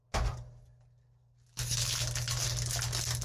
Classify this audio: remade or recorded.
recorded